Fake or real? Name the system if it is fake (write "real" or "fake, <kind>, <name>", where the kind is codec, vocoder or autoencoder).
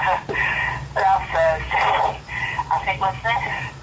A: real